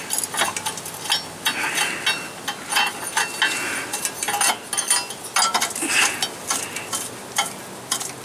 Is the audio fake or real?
real